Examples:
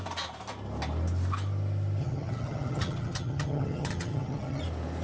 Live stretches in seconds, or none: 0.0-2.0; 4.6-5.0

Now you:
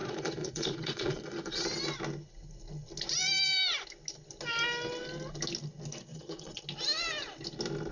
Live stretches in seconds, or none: 1.6-6.1; 6.6-7.9

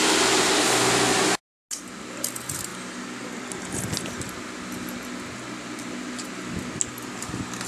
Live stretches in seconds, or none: 0.0-7.7

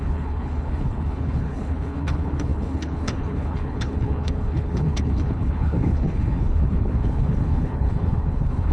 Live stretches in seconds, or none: none

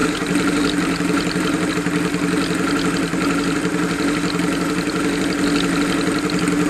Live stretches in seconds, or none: 1.7-6.7

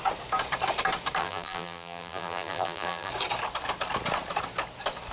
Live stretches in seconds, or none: 0.0-1.2; 3.1-5.1

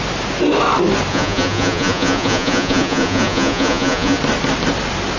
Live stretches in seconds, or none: 0.0-1.1; 4.2-5.2

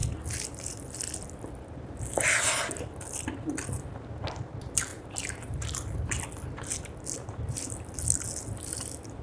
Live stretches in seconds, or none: 0.0-4.9; 6.1-9.2